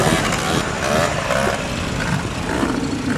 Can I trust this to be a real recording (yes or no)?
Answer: yes